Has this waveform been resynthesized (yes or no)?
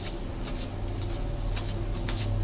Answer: no